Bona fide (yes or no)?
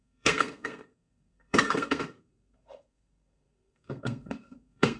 no